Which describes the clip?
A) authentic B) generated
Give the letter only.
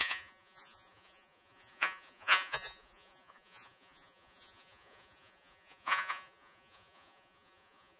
B